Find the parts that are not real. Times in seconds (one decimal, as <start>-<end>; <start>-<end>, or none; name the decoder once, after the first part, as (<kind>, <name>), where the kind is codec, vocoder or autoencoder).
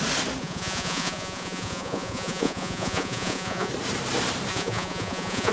0.4-3.7 (vocoder, Vocos); 4.5-5.5